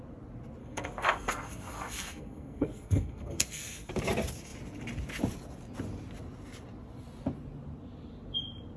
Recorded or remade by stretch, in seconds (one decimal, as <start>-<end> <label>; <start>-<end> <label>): 0.0-0.6 recorded; 0.6-3.9 remade; 3.9-8.8 recorded